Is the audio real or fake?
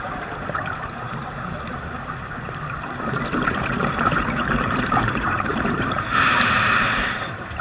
fake